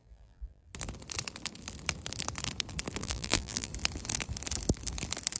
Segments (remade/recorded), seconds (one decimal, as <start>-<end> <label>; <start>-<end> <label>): 0.0-0.7 remade; 0.7-3.0 recorded; 3.0-3.7 remade; 3.7-5.4 recorded